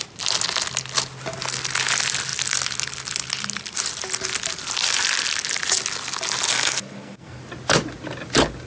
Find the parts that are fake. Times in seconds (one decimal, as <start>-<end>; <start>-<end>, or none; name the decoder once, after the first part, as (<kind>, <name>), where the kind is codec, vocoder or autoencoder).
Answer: 6.5-7.4 (codec, SNAC)